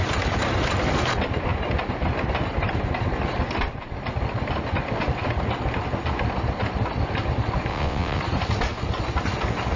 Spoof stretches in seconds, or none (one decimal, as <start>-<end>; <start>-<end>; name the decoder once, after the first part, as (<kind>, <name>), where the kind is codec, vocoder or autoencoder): 7.7-8.2 (vocoder, WaveNeXt)